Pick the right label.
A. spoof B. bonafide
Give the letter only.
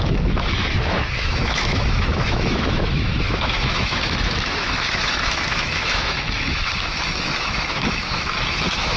A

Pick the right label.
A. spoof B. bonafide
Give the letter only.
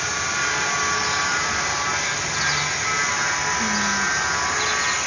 B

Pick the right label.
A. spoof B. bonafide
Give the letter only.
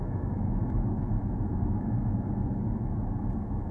A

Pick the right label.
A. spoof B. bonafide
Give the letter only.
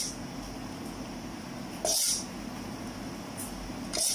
B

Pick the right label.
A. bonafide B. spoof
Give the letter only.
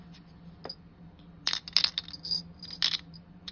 A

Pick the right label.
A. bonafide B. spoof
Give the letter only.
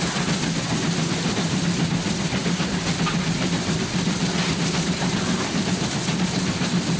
B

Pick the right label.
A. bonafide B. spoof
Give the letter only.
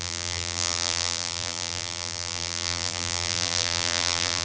B